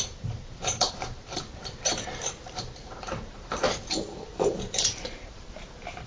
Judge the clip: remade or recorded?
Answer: remade